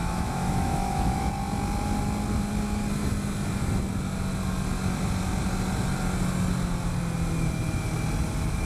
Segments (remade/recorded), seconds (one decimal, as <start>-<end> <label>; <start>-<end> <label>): 0.0-1.3 remade; 1.3-8.6 recorded